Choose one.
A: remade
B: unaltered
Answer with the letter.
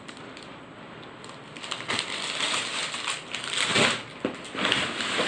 B